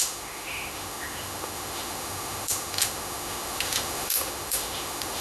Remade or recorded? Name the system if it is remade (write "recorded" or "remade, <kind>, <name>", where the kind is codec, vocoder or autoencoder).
remade, autoencoder, DAC-VAE